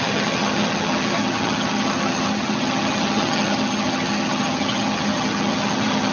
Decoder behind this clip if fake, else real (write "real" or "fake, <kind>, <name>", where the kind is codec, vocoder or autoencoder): fake, vocoder, HiFi-GAN